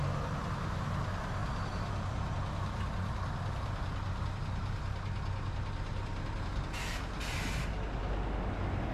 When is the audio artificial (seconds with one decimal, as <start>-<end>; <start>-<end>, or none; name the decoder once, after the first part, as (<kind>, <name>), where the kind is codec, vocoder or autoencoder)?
none